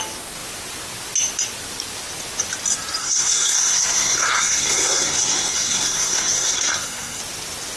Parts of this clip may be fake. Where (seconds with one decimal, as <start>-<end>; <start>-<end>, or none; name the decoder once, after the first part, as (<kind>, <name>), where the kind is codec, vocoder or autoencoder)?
3.0-7.2 (codec, SNAC)